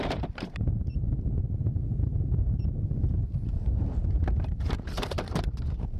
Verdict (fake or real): fake